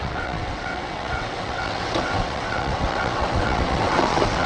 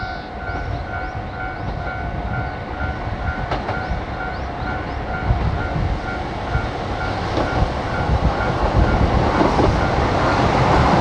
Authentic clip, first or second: second